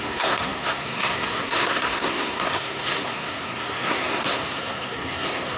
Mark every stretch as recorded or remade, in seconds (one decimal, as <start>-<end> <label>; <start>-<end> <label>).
0.0-5.6 remade